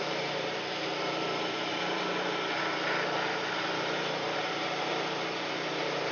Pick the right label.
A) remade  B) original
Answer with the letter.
A